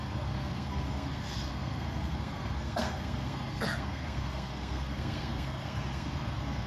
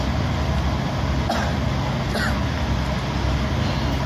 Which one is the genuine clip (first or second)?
second